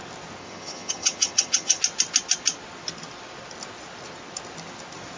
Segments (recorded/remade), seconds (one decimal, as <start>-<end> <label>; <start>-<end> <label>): 0.0-0.4 recorded; 0.4-1.8 remade; 1.8-5.2 recorded